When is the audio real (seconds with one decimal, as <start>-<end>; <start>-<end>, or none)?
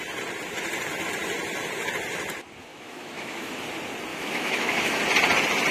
0.0-2.7; 3.5-4.1; 5.0-5.7